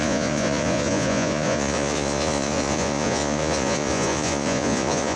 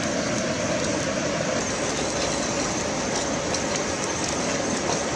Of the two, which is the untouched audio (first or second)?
second